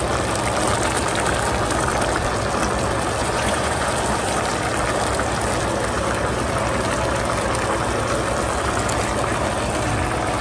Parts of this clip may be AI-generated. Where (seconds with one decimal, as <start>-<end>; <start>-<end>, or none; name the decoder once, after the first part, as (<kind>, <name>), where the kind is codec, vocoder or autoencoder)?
3.2-3.9 (vocoder, Vocos)